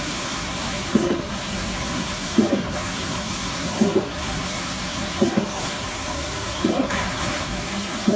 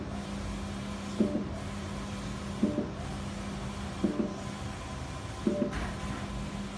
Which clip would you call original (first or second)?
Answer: second